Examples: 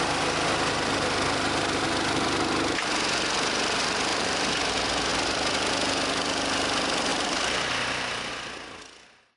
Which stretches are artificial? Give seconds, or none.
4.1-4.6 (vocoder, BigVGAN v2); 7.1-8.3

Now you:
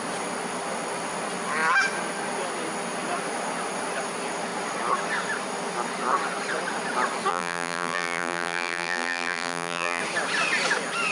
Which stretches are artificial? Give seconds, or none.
7.3-10.0 (vocoder, BigVGAN v2)

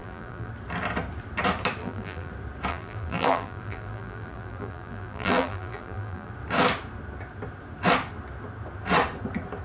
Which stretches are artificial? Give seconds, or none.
0.0-0.5 (vocoder, BigVGAN v2); 1.8-2.3; 2.7-6.3

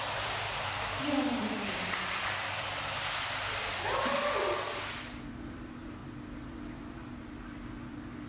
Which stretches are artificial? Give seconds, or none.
0.0-6.0 (vocoder, BigVGAN v2); 6.8-8.3

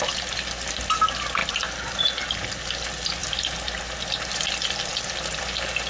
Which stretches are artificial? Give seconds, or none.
3.2-3.8 (vocoder, BigVGAN v2)

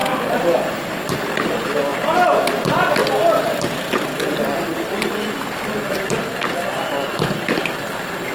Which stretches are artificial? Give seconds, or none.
0.0-1.2 (vocoder, BigVGAN v2); 3.0-8.3